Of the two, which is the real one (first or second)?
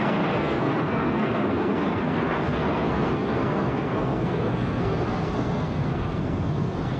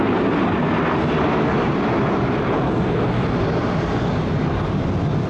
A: second